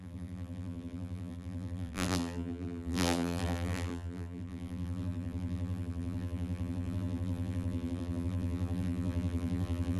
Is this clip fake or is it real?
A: fake